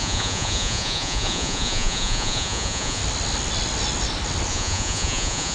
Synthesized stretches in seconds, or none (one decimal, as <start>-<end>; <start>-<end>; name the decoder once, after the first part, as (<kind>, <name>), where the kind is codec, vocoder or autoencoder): 0.0-3.0 (vocoder, Vocos); 4.5-5.5